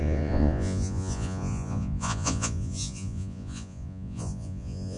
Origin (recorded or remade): remade